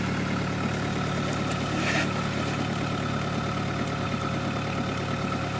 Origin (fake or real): real